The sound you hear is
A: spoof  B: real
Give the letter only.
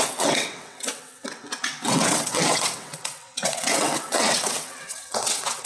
A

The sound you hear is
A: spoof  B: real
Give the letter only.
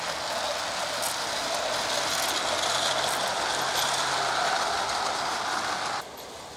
B